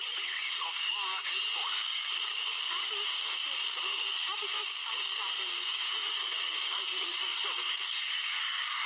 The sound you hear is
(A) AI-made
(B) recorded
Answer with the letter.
A